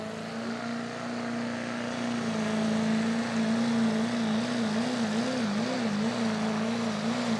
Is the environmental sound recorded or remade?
recorded